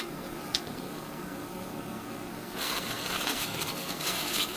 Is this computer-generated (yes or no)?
yes